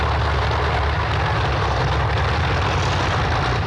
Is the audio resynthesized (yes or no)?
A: no